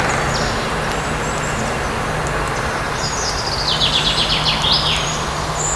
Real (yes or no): yes